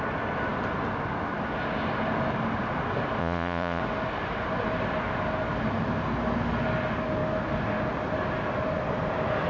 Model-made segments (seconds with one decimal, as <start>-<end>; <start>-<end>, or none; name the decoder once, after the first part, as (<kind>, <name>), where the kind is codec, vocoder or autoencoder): 3.2-3.8 (vocoder, Vocos)